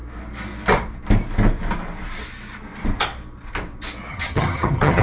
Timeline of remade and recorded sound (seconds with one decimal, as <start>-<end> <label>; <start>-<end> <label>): 0.0-4.1 recorded; 4.1-5.0 remade